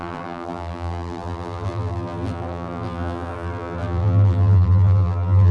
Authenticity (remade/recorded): remade